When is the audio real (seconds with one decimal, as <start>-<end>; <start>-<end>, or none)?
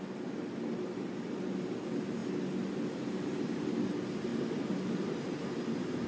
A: 0.0-6.1